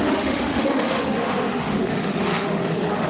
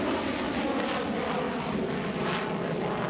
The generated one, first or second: first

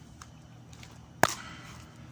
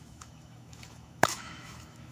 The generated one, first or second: second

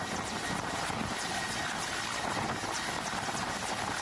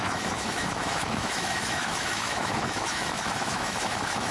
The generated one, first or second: second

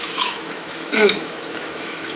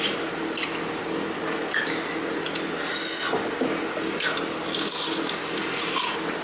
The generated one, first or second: first